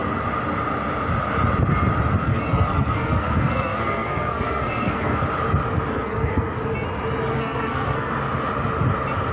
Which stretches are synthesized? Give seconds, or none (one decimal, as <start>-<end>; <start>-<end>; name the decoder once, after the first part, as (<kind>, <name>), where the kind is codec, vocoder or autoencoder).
2.2-5.2 (codec, SNAC); 5.9-6.6; 7.3-8.2